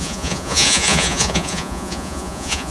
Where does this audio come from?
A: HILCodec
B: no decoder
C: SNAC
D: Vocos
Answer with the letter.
D